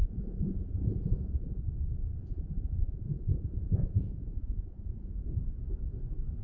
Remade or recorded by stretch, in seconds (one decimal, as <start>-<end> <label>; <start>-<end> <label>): 0.0-1.6 remade; 1.6-2.2 recorded; 2.2-5.1 remade; 5.1-6.4 recorded